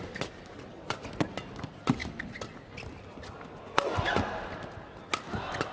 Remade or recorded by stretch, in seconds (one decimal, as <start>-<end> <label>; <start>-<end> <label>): 0.0-5.7 recorded